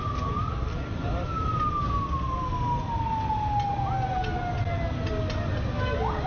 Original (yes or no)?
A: yes